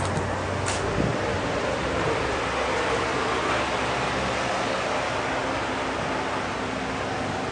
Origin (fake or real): real